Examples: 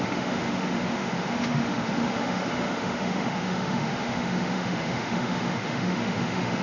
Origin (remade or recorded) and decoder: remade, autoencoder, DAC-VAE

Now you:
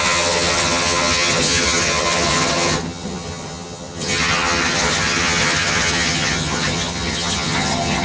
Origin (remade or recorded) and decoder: remade, vocoder, HiFi-GAN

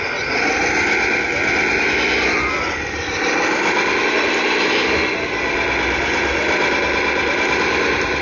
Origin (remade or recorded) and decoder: recorded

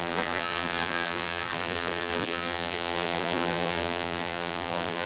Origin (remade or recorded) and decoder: remade, vocoder, BigVGAN v2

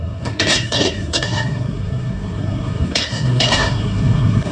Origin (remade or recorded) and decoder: remade, codec, SNAC